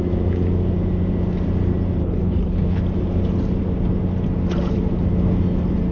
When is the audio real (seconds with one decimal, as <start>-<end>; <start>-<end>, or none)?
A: 0.0-2.0; 2.8-5.9